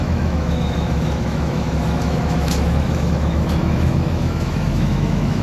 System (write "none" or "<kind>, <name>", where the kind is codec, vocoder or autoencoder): autoencoder, DAC-VAE